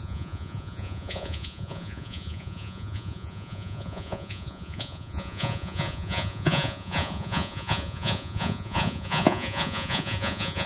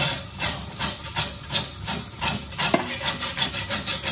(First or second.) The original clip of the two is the second